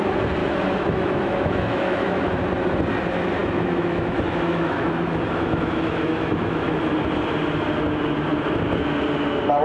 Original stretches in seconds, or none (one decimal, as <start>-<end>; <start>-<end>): 0.0-0.4; 2.4-3.4; 6.9-9.6